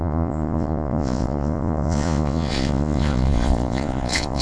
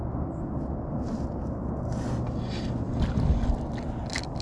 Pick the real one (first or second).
second